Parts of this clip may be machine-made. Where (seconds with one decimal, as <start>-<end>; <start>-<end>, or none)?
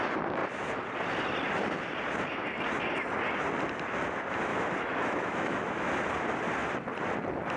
4.5-5.9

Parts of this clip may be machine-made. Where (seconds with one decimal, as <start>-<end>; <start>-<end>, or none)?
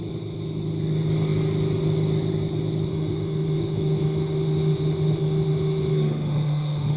2.9-7.0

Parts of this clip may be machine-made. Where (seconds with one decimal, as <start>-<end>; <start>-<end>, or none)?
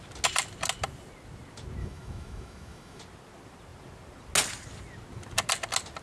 1.8-3.0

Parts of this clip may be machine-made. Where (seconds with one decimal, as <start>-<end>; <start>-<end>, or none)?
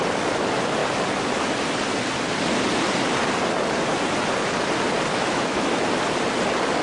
5.1-5.8